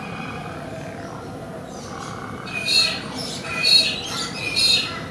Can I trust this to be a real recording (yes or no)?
yes